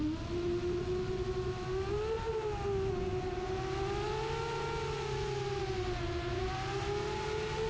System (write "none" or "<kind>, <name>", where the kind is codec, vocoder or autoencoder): none